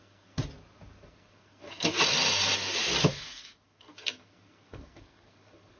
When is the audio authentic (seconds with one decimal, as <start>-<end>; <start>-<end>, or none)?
0.4-1.1; 2.0-3.1